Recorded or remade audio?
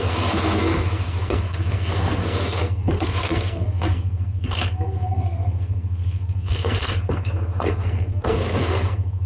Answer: remade